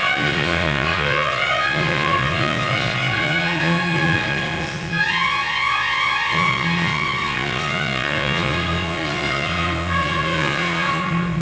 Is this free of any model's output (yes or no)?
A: no